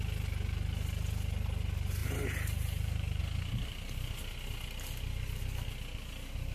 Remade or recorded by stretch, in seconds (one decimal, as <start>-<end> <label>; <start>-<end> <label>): 0.0-2.0 recorded; 2.0-3.2 remade; 3.2-6.5 recorded